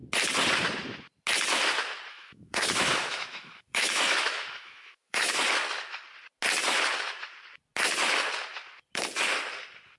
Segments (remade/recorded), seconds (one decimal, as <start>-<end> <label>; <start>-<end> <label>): 0.0-2.1 recorded; 2.1-5.3 remade; 5.3-10.0 recorded